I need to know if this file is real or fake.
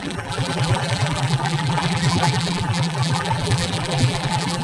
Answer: fake